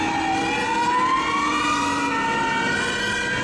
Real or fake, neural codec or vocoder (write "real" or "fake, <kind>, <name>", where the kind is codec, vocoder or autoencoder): real